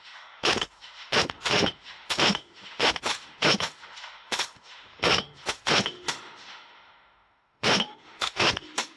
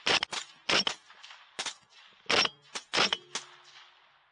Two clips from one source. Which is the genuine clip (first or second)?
second